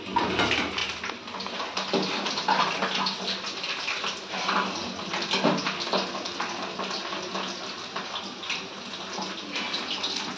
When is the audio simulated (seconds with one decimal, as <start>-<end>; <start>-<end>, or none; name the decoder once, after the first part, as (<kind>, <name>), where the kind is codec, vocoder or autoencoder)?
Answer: none